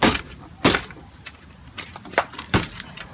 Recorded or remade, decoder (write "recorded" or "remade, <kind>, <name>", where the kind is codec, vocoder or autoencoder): recorded